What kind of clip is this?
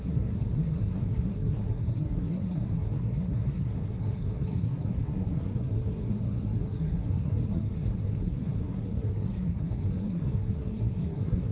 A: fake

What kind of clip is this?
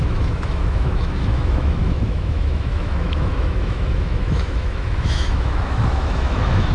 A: fake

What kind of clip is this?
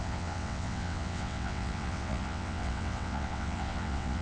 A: fake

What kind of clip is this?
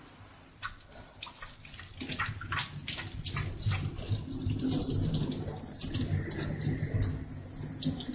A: real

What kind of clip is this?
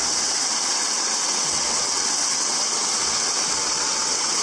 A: fake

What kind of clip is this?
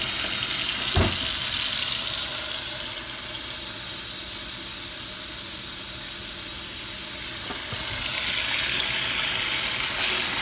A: real